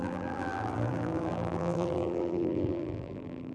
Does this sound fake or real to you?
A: fake